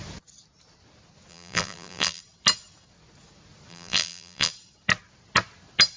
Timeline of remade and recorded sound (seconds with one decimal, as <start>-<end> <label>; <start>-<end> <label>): 0.0-1.3 recorded; 1.3-2.2 remade; 2.2-3.7 recorded; 3.7-4.5 remade; 4.5-6.0 recorded